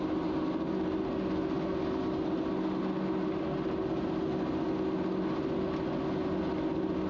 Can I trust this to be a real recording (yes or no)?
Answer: yes